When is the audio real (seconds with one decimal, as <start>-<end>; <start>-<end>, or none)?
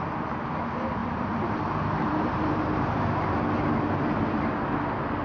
0.0-1.0; 3.0-5.2